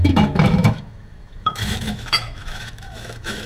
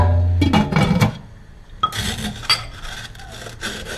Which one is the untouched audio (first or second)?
second